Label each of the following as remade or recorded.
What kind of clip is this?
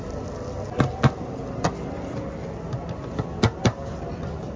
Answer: recorded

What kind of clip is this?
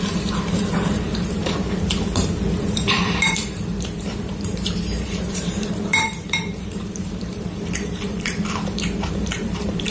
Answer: remade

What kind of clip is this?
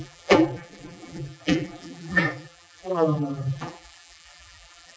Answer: remade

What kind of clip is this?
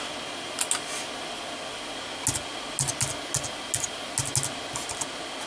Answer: recorded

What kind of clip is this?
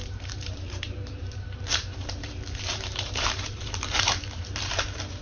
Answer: remade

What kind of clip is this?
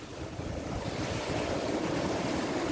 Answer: remade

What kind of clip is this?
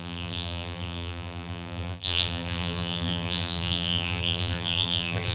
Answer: remade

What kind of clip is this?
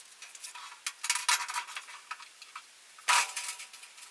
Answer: recorded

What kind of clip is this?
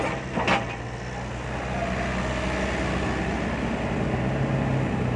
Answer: recorded